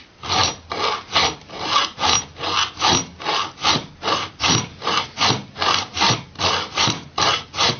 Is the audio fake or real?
real